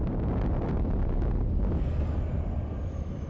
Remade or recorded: recorded